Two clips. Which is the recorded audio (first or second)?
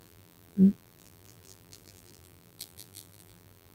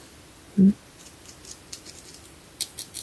second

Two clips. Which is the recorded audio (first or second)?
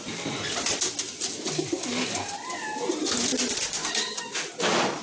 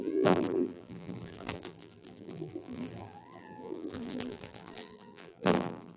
first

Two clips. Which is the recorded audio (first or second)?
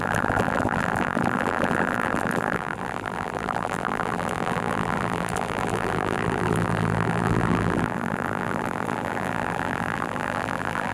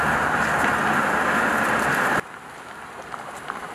second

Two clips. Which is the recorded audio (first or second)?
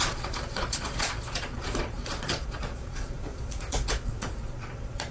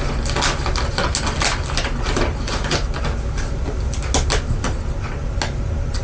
second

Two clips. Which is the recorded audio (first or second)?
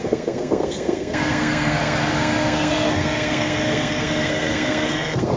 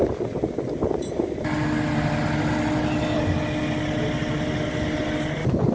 second